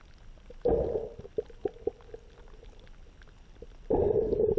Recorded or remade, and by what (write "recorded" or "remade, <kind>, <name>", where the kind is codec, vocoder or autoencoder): recorded